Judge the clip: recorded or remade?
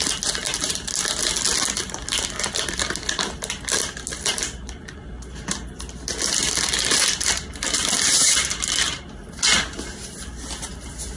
recorded